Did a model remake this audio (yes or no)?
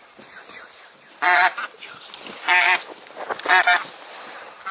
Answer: no